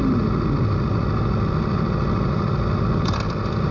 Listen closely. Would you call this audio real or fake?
real